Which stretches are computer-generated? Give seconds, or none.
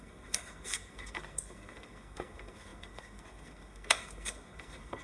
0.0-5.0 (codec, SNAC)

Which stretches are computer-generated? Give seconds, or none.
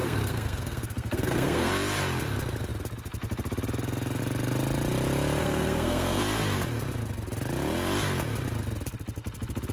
0.0-1.7 (codec, SNAC); 5.4-6.2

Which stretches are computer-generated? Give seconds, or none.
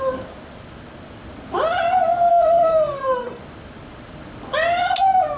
2.3-3.4 (codec, SNAC)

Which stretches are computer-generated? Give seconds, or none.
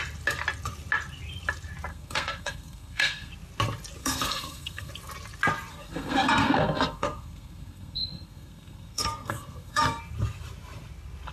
1.9-3.3 (codec, SNAC); 4.0-4.9; 5.7-10.0